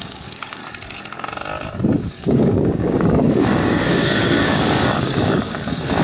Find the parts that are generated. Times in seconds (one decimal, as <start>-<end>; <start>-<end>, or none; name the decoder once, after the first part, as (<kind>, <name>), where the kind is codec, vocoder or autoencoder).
0.0-0.6 (codec, DAC); 2.0-6.0